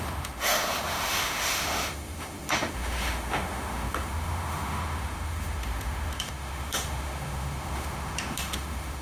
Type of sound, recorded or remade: remade